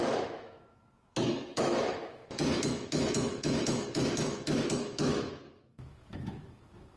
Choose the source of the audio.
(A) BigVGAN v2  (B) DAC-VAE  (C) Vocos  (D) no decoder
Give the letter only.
B